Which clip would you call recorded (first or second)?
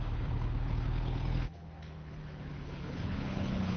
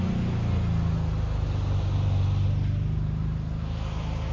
second